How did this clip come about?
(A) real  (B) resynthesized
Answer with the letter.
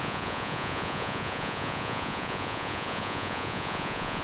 B